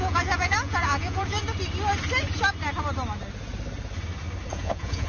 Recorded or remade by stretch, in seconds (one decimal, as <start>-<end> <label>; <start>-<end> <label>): 0.0-1.4 remade; 1.4-4.5 recorded; 4.5-5.1 remade